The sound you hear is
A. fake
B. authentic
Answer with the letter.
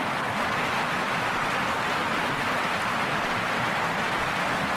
B